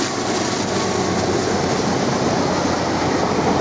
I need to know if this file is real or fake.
real